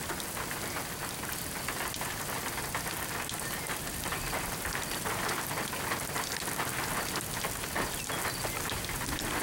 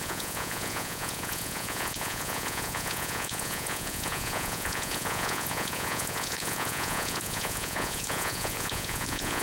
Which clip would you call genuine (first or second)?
first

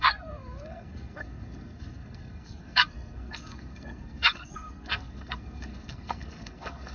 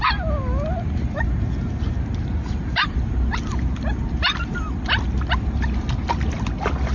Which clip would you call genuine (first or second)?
second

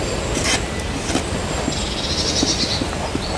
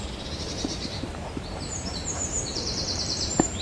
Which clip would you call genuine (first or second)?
first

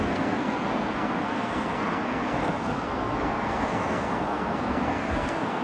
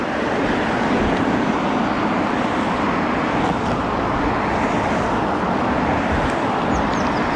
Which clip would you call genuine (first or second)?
second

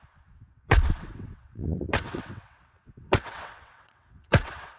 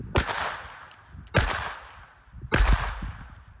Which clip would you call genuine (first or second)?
second